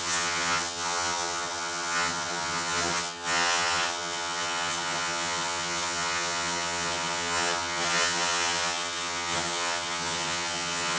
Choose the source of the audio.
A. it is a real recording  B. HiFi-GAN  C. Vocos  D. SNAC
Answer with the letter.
B